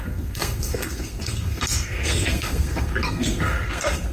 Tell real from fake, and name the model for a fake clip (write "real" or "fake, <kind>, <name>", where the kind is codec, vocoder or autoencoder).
fake, codec, SNAC